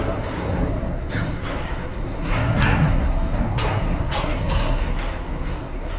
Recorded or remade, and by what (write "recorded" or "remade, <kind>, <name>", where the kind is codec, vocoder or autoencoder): remade, codec, SNAC